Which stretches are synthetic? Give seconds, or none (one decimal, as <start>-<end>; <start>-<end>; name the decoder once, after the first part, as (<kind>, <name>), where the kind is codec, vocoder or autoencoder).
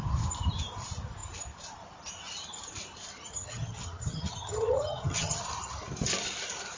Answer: 3.3-5.4 (vocoder, HiFi-GAN)